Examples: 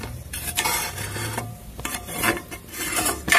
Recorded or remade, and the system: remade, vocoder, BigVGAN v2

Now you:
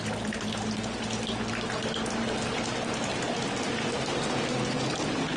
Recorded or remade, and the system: recorded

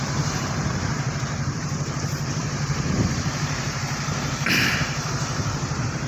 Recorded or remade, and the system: remade, vocoder, BigVGAN v2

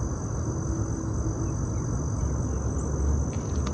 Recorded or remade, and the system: recorded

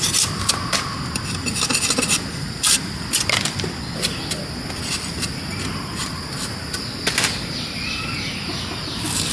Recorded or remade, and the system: recorded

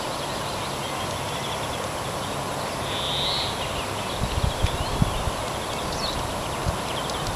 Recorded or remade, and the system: recorded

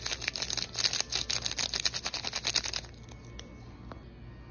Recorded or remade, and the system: recorded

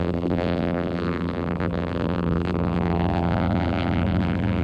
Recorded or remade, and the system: remade, vocoder, BigVGAN v2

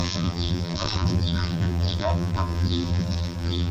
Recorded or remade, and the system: remade, vocoder, BigVGAN v2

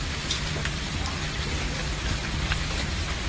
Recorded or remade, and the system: remade, vocoder, BigVGAN v2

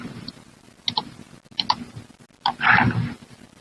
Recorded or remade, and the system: recorded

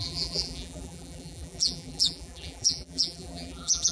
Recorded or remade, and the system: remade, vocoder, BigVGAN v2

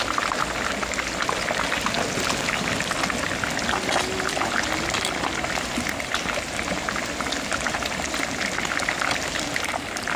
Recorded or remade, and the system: recorded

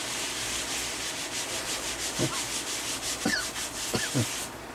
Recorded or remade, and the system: remade, vocoder, BigVGAN v2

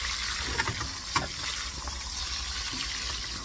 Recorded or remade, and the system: recorded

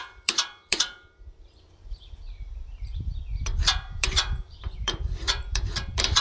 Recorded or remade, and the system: remade, vocoder, BigVGAN v2